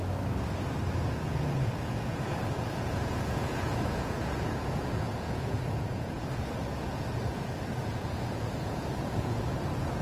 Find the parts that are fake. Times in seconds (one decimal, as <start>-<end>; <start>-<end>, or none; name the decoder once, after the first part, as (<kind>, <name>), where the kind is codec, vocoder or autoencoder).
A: 1.1-10.0 (vocoder, Vocos)

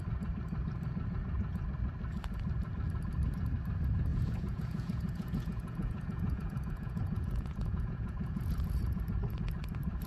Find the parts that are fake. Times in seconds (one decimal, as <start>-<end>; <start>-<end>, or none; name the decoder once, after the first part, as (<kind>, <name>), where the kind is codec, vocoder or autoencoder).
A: 4.1-9.0 (vocoder, Vocos)

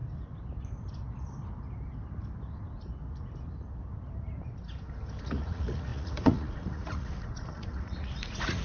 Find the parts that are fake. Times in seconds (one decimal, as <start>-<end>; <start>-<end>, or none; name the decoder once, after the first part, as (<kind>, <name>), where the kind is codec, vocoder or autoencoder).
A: 5.2-8.6 (vocoder, Vocos)

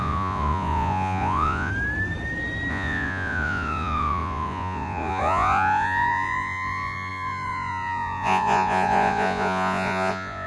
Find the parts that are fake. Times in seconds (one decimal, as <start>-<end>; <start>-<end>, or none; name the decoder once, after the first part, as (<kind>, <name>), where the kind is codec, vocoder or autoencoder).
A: 0.0-1.7 (vocoder, Vocos); 2.7-10.5

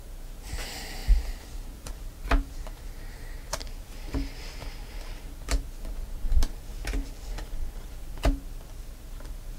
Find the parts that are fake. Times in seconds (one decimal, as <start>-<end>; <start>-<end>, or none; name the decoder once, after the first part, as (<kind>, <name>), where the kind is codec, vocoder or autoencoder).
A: none